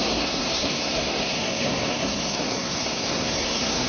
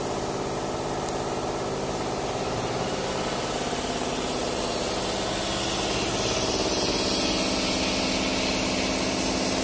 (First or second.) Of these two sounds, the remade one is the first